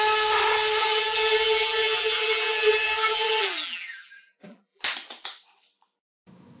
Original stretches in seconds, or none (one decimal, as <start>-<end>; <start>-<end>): 0.0-0.8; 4.8-6.6